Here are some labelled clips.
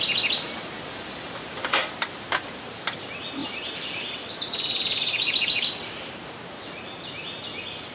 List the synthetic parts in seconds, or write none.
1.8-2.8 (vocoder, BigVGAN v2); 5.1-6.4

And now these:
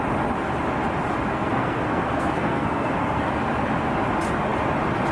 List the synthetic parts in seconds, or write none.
1.3-3.3 (codec, SNAC)

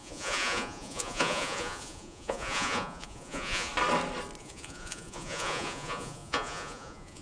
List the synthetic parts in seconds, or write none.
0.0-3.7 (vocoder, Vocos); 4.4-7.2

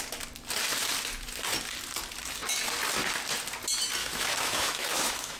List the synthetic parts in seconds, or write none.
4.0-5.4 (autoencoder, DAC-VAE)

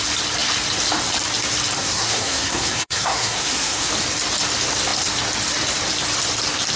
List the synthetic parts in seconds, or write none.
1.8-3.9 (codec, SNAC)

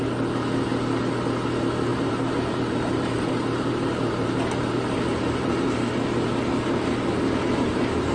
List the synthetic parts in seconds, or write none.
1.9-5.8 (vocoder, BigVGAN v2)

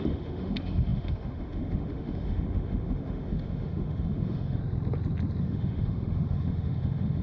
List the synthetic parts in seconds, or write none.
0.0-4.6 (autoencoder, DAC-VAE); 5.4-7.2

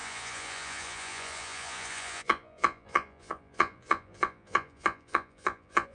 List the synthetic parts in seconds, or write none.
0.0-5.9 (vocoder, Vocos)